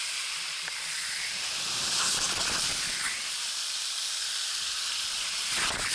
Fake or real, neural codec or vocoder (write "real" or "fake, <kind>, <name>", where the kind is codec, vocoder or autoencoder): fake, vocoder, BigVGAN v2